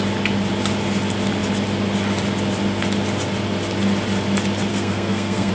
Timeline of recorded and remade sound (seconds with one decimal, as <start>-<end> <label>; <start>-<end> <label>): 0.0-4.7 recorded; 4.7-5.5 remade